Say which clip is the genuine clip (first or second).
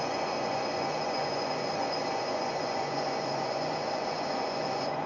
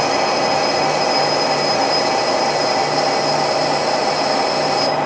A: second